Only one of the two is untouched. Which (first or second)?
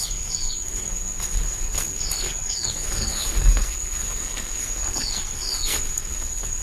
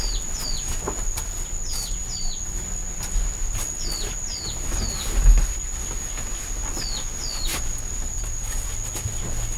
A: second